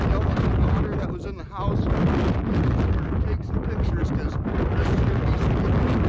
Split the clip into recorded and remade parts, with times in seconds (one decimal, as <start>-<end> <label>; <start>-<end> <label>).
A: 0.0-6.1 recorded